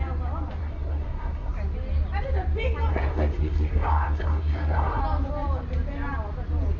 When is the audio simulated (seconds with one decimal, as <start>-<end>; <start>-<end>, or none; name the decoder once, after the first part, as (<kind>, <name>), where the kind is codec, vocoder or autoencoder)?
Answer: 0.6-1.5 (codec, SNAC); 2.9-5.0